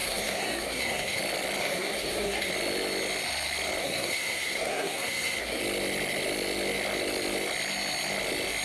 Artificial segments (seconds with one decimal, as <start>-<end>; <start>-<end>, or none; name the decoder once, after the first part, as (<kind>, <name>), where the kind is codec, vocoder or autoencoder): 0.0-1.2 (codec, SNAC); 1.6-2.5; 3.8-5.6